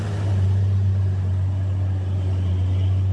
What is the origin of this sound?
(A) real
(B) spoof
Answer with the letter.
A